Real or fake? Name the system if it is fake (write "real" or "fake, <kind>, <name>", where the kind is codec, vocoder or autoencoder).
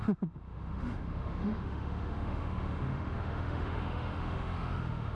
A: fake, autoencoder, DAC-VAE